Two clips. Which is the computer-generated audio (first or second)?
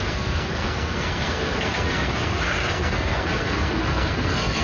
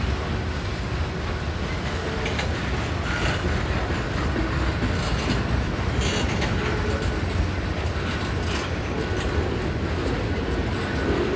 first